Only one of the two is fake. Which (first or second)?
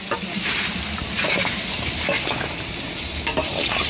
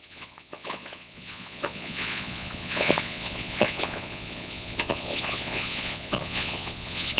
second